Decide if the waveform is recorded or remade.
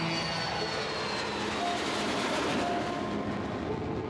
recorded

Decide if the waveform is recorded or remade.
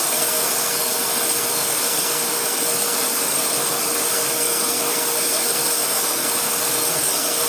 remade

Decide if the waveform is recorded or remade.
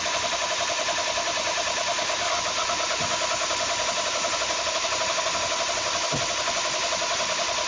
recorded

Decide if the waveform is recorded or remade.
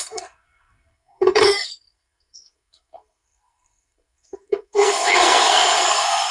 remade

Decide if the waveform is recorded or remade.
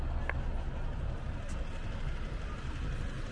recorded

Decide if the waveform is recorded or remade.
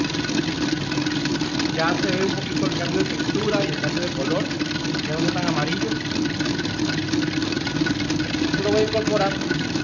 recorded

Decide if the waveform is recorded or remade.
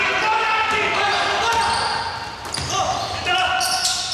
recorded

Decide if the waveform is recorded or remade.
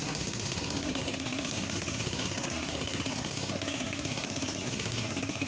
remade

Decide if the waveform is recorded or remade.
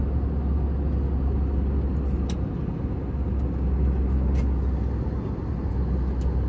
recorded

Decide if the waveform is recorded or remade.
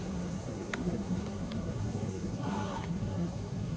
remade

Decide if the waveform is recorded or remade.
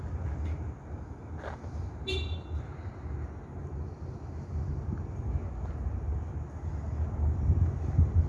recorded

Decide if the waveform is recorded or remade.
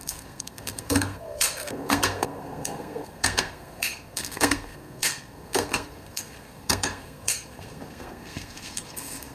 remade